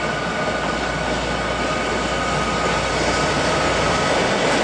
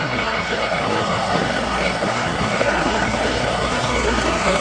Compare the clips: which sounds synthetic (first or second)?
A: second